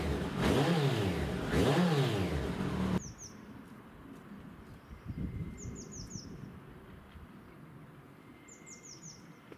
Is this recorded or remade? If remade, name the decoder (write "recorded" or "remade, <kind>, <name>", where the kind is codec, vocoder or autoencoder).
recorded